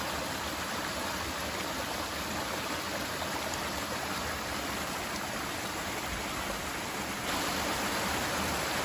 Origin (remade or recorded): recorded